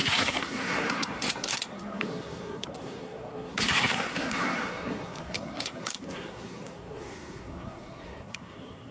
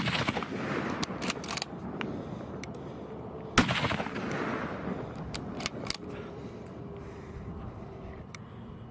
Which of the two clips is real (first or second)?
second